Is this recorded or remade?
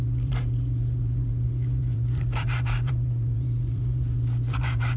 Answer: remade